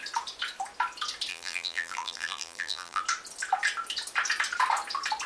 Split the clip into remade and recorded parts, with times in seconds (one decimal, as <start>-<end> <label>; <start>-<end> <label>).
0.0-1.3 recorded; 1.3-3.0 remade; 3.0-5.3 recorded